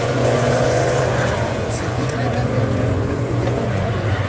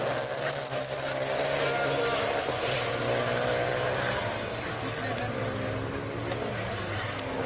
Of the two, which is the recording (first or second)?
second